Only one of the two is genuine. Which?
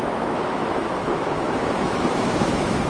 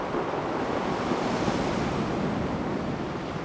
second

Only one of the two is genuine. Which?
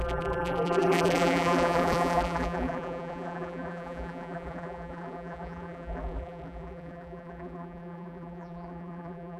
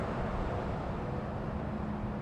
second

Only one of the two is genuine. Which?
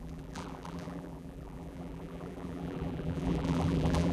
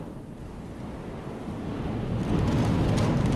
second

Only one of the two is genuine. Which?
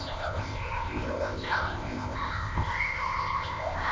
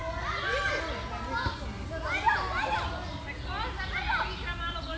second